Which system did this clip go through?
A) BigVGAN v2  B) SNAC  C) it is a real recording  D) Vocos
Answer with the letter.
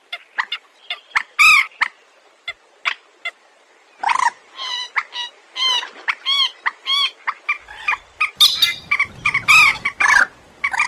C